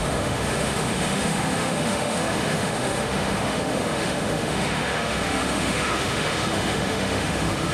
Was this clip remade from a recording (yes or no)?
yes